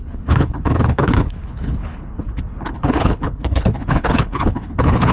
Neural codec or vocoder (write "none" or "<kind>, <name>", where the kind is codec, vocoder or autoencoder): codec, HILCodec